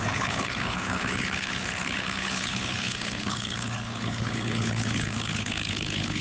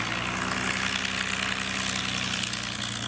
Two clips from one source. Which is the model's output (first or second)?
first